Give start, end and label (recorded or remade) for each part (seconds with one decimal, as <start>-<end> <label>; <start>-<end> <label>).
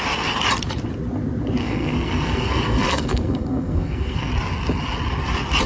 0.0-1.6 recorded; 1.6-4.3 remade; 4.3-5.7 recorded